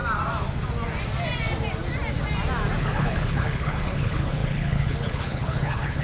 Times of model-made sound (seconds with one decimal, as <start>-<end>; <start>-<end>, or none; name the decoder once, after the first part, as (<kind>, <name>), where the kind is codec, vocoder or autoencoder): 2.8-6.0 (codec, HILCodec)